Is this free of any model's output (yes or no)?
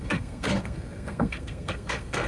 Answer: no